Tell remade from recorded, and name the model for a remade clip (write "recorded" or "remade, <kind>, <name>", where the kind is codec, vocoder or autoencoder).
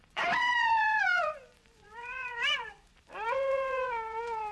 remade, vocoder, Vocos